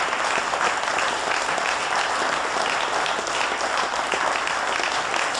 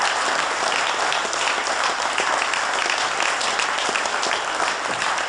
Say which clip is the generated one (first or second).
second